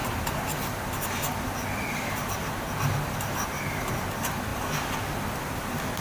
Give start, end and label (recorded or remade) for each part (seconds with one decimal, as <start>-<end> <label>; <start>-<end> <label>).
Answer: 0.0-6.0 recorded